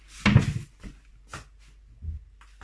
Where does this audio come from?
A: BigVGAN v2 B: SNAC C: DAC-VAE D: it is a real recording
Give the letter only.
D